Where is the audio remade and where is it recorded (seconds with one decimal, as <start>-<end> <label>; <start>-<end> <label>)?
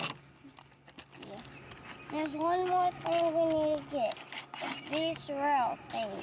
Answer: 0.0-6.2 recorded